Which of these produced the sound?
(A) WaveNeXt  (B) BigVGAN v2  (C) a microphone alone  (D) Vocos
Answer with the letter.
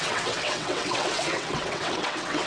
A